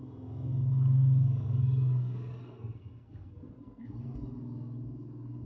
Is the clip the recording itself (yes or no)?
no